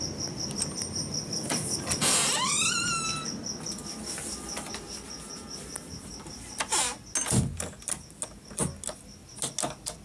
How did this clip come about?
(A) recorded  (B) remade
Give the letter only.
A